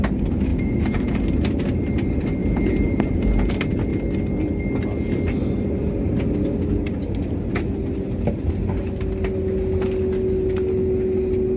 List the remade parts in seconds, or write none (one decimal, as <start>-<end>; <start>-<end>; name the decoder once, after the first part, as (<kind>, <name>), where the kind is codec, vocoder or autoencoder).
0.5-1.2 (vocoder, Vocos); 2.4-3.5